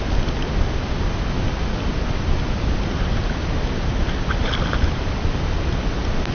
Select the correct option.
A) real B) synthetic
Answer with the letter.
A